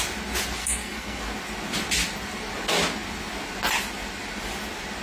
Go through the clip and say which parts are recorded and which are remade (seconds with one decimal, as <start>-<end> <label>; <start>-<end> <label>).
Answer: 0.0-0.6 recorded; 0.6-1.2 remade; 1.2-5.0 recorded